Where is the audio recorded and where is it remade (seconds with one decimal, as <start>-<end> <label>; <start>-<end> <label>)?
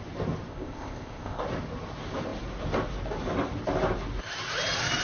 0.0-0.5 recorded; 0.5-1.4 remade; 1.4-5.0 recorded